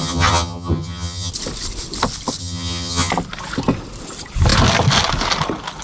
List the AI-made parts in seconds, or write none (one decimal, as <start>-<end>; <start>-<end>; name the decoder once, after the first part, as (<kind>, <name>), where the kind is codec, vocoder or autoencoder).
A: 0.0-1.3 (vocoder, HiFi-GAN); 2.4-3.1